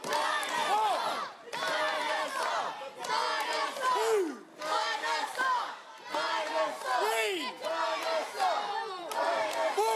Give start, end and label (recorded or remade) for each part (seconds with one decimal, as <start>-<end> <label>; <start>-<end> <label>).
0.0-4.5 recorded; 4.5-6.0 remade; 6.0-10.0 recorded